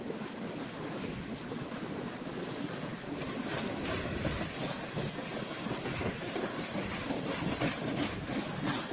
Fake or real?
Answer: real